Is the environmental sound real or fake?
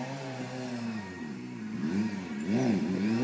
fake